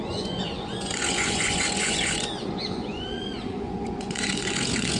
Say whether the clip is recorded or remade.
remade